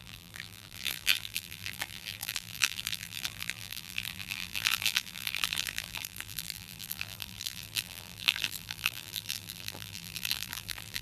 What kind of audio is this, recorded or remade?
remade